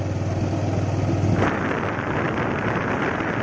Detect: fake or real real